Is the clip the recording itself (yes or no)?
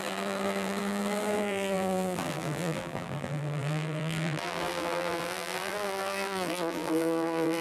no